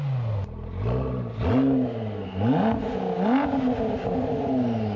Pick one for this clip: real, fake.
real